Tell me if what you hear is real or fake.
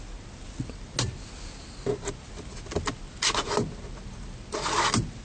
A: real